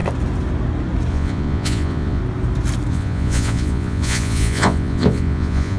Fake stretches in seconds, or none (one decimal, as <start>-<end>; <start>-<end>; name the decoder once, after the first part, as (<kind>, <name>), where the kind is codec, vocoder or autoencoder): 1.1-2.2 (vocoder, Vocos); 2.9-5.8